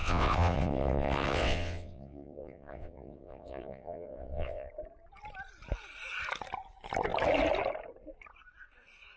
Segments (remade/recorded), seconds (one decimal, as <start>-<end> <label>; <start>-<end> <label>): 0.0-4.7 remade; 4.7-9.2 recorded